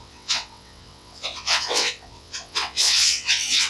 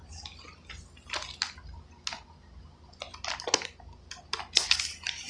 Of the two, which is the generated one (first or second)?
first